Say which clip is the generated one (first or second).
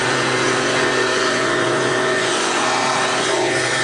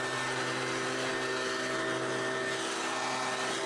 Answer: first